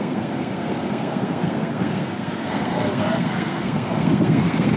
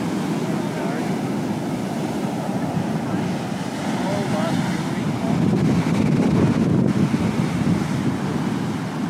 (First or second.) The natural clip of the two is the second